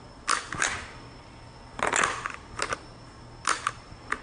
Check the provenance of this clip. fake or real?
real